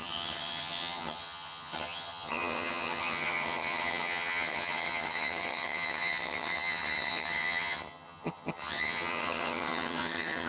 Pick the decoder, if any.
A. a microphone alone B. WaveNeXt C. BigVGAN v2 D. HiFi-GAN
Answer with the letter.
D